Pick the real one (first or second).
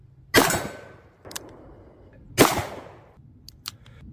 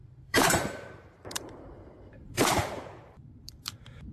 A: first